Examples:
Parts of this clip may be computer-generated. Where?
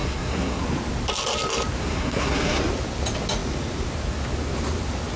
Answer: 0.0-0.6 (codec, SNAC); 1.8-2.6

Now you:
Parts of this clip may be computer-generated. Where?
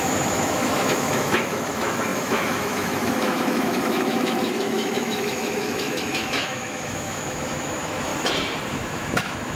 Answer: 0.0-8.1 (autoencoder, DAC-VAE); 8.7-9.6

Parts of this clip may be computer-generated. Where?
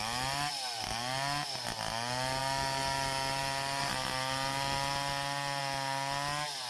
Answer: none